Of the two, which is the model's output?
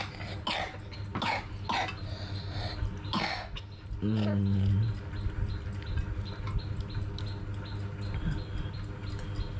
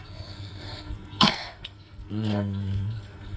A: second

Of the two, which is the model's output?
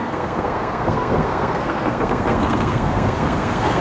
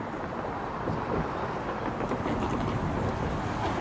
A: first